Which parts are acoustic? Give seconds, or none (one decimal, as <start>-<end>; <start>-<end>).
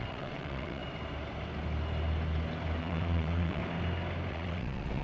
0.8-2.8; 3.6-4.3